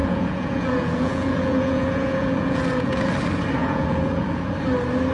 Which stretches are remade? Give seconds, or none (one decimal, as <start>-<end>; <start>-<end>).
0.0-3.1; 3.6-4.5